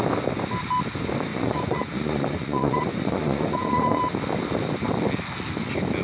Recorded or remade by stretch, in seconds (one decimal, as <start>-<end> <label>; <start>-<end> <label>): 0.0-1.3 recorded; 1.3-4.0 remade; 4.0-6.0 recorded